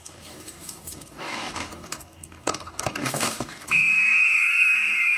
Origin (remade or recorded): remade